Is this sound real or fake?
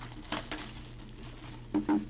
real